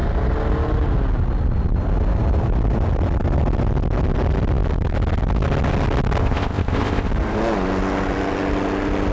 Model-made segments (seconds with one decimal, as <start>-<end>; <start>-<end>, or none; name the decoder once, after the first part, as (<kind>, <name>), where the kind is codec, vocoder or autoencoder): 6.2-7.1 (codec, ZipCodec)